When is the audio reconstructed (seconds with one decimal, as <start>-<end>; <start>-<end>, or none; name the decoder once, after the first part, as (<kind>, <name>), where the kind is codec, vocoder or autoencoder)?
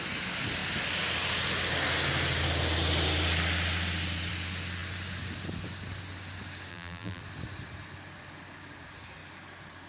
6.7-7.2 (vocoder, BigVGAN v2)